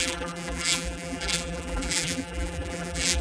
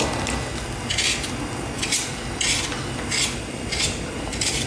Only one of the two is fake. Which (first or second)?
first